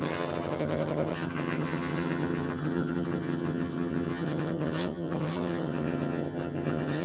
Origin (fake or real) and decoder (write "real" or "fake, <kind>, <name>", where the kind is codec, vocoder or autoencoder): fake, vocoder, HiFi-GAN